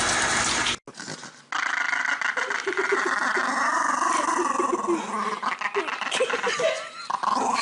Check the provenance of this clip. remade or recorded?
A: recorded